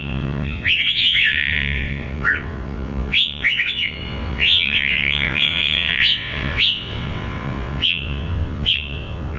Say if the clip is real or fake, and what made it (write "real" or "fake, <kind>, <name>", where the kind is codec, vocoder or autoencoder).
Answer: fake, vocoder, WaveNeXt